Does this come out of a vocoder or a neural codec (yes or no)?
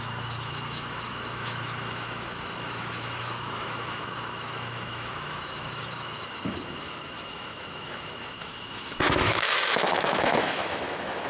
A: yes